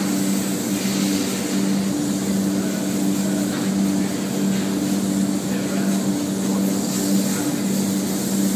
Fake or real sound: real